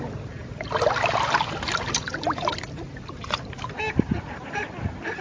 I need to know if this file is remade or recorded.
remade